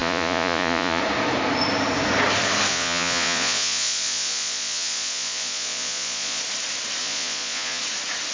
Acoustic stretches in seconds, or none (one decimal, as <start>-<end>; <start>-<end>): 1.0-2.7; 6.4-7.0; 7.8-8.3